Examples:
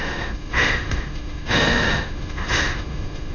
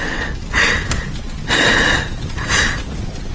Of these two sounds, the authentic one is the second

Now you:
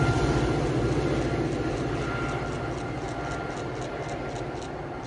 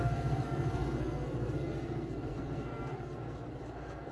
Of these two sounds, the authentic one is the first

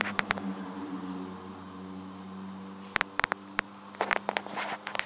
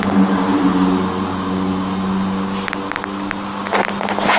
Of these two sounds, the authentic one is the second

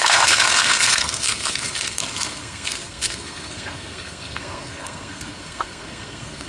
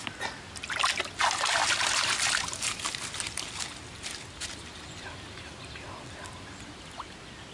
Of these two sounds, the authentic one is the second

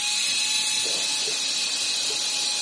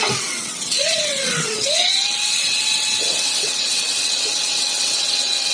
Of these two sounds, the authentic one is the first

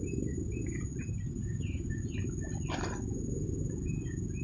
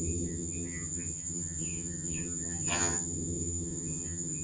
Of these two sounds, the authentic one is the first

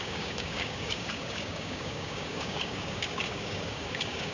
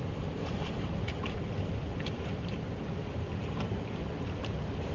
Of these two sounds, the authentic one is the second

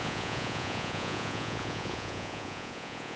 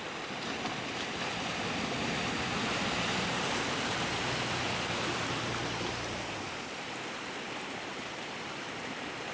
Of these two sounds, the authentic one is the second